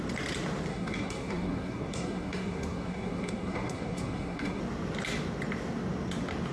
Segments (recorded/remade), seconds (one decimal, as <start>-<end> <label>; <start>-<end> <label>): 0.0-0.7 recorded; 0.7-4.6 remade; 4.6-6.5 recorded